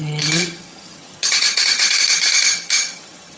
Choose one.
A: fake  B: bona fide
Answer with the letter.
A